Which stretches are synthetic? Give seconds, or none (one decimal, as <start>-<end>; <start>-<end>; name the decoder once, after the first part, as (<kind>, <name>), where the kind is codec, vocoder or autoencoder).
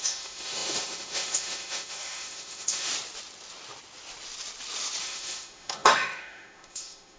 0.0-2.9 (autoencoder, DAC-VAE); 5.0-7.2